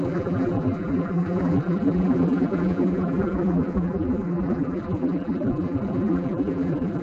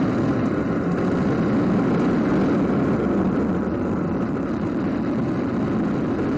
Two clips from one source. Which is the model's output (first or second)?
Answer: first